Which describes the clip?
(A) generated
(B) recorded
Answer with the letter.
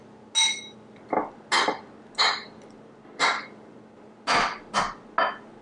B